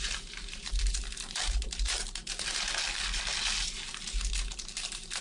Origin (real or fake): fake